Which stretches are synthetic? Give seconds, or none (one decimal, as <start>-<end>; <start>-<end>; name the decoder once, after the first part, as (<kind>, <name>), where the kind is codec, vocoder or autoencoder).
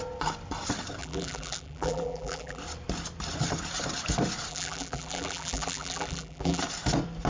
1.0-2.6 (vocoder, BigVGAN v2); 4.5-6.6